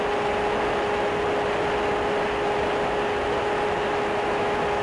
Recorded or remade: recorded